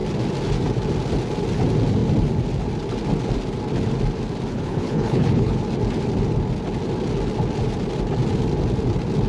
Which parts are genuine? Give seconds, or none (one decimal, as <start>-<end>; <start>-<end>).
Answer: 0.0-4.5; 5.6-9.3

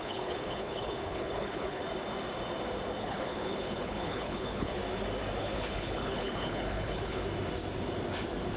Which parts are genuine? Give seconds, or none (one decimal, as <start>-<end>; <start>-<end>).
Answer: 1.8-3.0; 4.8-5.4; 7.2-8.6

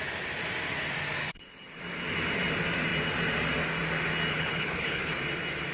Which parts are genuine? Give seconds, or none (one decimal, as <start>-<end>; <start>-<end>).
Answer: 0.0-1.2; 1.8-4.3; 5.1-5.7

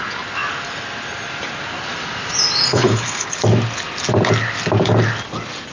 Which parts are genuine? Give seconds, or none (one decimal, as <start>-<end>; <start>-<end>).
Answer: 0.0-2.7; 3.4-5.7

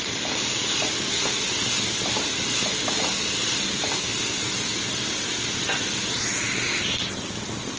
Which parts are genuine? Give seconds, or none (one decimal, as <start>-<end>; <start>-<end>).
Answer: 0.0-7.8